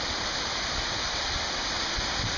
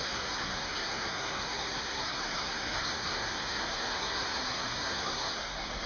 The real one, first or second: first